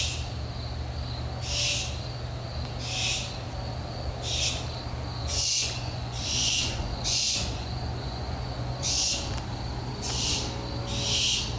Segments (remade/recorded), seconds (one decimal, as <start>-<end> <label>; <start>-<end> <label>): 0.0-5.2 recorded; 5.2-9.1 remade; 9.1-9.9 recorded; 9.9-10.4 remade; 10.4-11.6 recorded